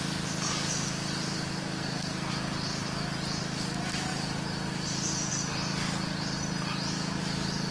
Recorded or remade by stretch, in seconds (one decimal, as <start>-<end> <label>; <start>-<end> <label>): 0.0-1.6 recorded; 1.6-2.3 remade; 2.3-7.7 recorded